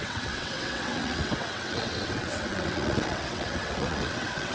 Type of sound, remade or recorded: remade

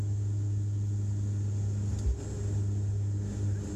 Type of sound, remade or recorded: recorded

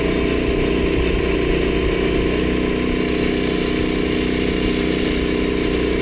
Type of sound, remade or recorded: recorded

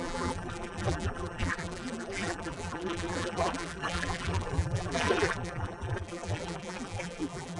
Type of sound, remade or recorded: remade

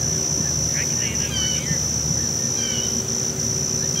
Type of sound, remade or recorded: recorded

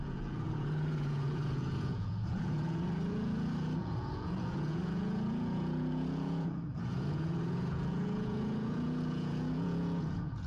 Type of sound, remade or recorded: remade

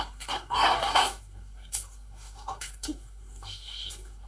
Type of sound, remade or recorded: remade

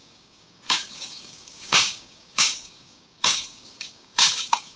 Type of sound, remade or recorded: remade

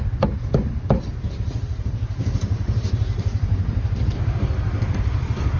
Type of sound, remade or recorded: recorded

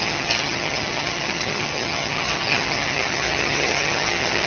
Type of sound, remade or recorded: remade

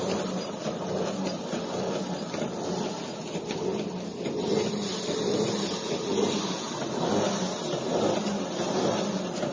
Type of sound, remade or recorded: recorded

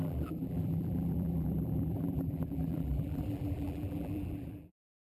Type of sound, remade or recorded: remade